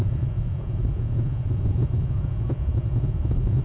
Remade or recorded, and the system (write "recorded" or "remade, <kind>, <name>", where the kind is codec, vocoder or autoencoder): remade, vocoder, Vocos